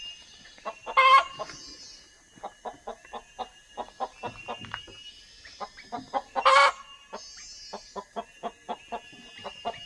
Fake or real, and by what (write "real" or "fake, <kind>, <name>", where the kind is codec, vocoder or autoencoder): real